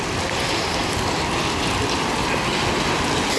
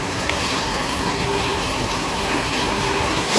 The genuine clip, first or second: first